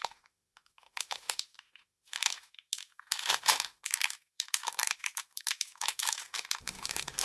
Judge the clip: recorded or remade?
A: remade